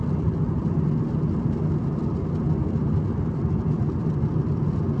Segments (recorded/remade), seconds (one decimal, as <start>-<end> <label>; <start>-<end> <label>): 0.0-5.0 recorded